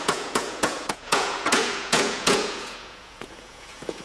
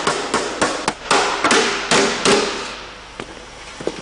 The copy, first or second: first